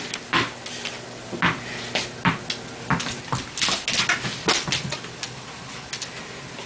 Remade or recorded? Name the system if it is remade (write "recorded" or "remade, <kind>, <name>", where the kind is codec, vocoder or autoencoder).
recorded